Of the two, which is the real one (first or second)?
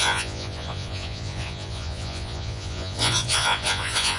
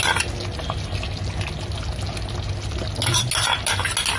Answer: second